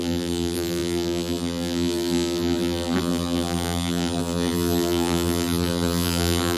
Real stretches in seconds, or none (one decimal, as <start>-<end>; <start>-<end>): none